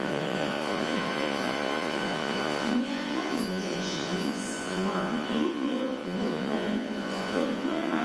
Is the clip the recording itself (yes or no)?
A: no